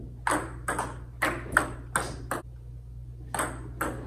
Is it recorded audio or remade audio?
recorded